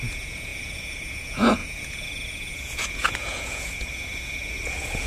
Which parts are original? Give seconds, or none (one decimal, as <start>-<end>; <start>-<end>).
none